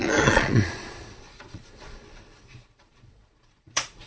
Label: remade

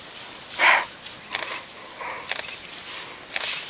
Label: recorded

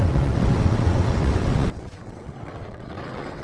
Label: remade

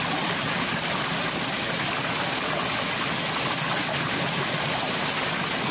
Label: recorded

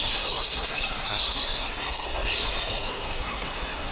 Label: remade